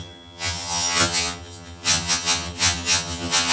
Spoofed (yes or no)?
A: yes